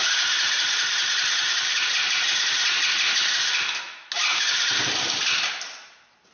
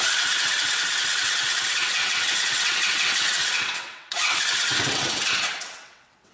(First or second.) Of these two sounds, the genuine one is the first